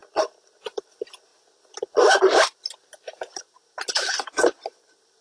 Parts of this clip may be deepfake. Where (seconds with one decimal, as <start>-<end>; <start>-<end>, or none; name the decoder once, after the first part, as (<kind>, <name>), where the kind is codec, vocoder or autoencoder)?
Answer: none